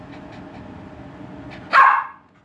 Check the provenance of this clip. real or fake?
real